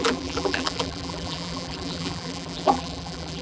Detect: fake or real fake